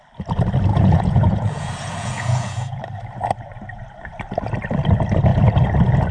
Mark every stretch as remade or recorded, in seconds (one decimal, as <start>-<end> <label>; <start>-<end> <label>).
0.0-0.7 recorded; 0.7-2.8 remade; 2.8-6.1 recorded